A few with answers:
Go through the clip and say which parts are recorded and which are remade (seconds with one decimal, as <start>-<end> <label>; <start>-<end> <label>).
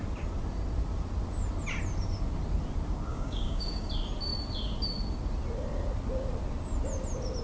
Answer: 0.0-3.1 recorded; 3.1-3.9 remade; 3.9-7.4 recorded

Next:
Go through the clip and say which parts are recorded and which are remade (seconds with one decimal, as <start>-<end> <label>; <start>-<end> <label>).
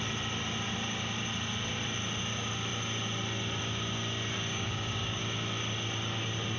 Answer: 0.0-4.5 recorded; 4.5-5.2 remade; 5.2-6.6 recorded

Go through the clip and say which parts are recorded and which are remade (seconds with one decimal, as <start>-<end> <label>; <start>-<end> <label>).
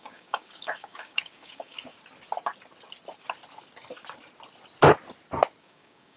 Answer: 0.0-1.9 remade; 1.9-5.6 recorded; 5.6-6.2 remade